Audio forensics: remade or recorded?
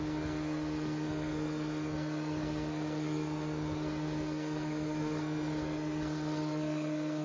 remade